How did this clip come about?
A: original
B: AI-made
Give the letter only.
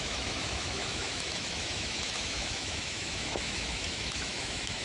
B